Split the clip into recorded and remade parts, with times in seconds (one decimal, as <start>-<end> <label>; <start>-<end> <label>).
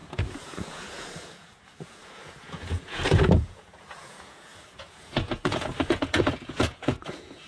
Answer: 0.0-7.5 remade